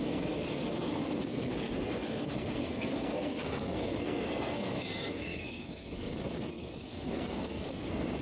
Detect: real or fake fake